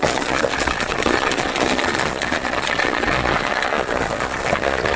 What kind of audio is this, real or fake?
fake